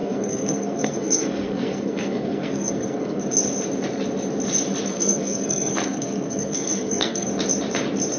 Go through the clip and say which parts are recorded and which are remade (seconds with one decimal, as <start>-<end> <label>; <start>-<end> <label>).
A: 0.0-3.2 remade; 3.2-4.9 recorded; 4.9-7.3 remade; 7.3-8.2 recorded